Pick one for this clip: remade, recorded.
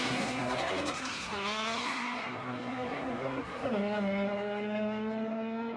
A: remade